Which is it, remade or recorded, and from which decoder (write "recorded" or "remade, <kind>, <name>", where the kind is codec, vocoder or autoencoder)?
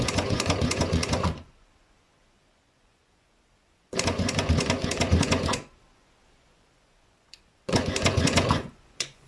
remade, vocoder, Vocos